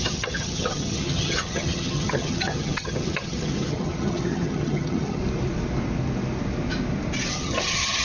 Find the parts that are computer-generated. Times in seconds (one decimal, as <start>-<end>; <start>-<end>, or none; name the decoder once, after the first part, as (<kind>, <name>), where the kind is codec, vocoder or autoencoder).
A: 0.0-5.2 (vocoder, HiFi-GAN); 7.3-8.0